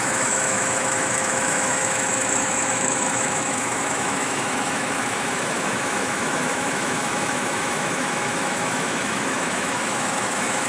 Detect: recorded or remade remade